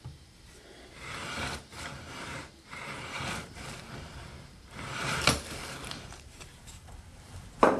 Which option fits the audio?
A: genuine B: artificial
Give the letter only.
B